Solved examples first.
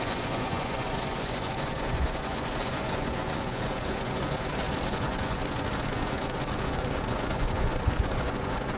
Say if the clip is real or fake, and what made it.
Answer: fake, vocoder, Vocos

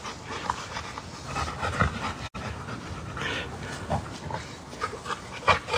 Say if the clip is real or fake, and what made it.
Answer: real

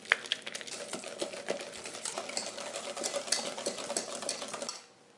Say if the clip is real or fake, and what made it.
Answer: real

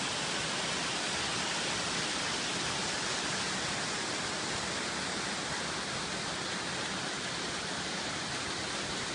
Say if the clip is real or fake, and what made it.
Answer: real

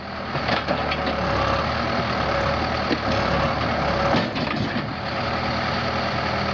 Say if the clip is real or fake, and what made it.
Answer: real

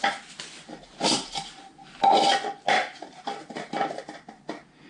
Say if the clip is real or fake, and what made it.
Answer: real